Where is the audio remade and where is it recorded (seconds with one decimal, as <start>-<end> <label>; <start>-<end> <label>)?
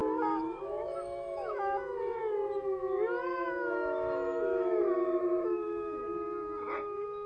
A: 0.0-6.0 remade; 6.0-7.3 recorded